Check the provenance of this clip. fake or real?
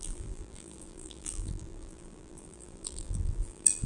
fake